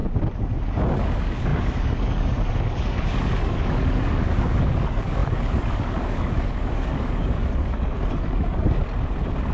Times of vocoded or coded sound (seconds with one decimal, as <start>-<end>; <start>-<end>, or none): 1.0-8.8